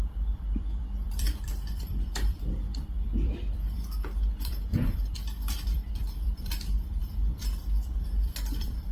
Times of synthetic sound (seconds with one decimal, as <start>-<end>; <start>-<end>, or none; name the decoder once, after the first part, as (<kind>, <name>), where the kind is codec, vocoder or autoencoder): 0.0-8.9 (vocoder, BigVGAN v2)